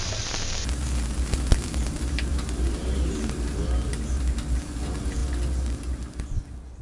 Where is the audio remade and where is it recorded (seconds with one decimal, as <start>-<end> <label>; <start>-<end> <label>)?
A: 0.0-2.3 recorded; 2.3-3.6 remade; 3.6-6.8 recorded